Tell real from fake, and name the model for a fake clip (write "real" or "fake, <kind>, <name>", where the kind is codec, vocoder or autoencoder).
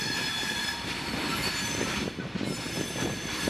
fake, vocoder, BigVGAN v2